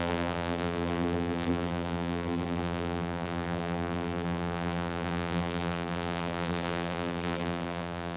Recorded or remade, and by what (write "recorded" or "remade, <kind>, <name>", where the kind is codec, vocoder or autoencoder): remade, vocoder, BigVGAN v2